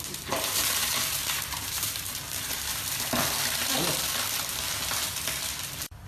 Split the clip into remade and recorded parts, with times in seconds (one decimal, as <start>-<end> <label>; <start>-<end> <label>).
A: 0.0-2.1 remade; 2.1-6.1 recorded